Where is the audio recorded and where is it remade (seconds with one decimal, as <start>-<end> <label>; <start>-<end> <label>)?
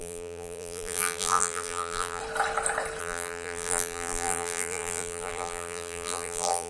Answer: 0.0-2.2 remade; 2.2-3.0 recorded; 3.0-6.7 remade